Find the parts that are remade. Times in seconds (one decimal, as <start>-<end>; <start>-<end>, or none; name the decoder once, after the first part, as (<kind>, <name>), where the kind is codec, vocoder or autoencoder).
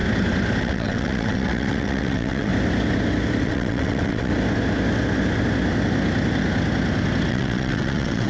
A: 0.6-2.5 (vocoder, WaveNeXt); 3.4-4.3; 7.3-8.3